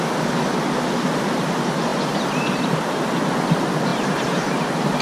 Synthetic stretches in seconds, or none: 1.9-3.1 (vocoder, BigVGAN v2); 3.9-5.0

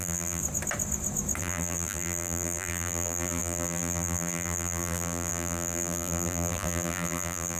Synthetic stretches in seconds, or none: 0.0-0.4 (vocoder, BigVGAN v2); 1.4-7.6

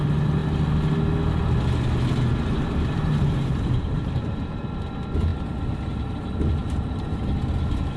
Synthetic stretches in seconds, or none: 2.3-4.6 (vocoder, BigVGAN v2)

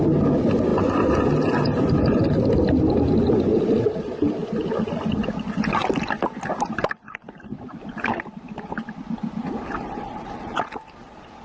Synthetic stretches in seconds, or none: 5.8-6.7 (vocoder, BigVGAN v2); 7.5-9.5

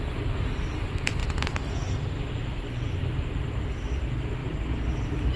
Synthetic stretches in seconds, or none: 4.4-5.4 (vocoder, BigVGAN v2)